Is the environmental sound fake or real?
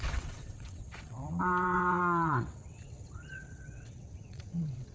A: fake